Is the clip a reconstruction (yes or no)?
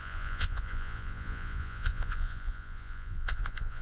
yes